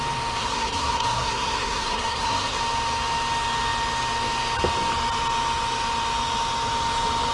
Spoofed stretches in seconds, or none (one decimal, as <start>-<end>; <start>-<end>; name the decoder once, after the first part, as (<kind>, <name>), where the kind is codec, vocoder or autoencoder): 0.4-2.6 (codec, SNAC)